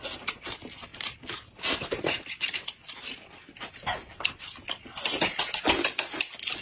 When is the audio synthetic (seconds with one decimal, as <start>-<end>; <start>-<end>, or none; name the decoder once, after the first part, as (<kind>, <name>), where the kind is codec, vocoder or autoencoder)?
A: 0.9-2.4 (vocoder, BigVGAN v2)